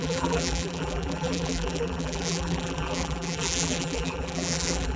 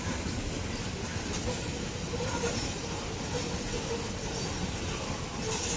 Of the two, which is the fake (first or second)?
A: first